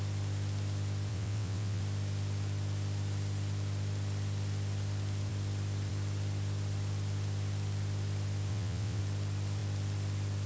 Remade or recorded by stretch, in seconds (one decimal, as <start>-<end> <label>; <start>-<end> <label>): 0.0-1.1 recorded; 1.1-1.8 remade; 1.8-8.5 recorded; 8.5-9.0 remade; 9.0-10.5 recorded